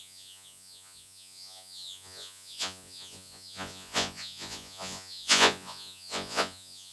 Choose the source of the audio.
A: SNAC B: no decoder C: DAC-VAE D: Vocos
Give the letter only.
D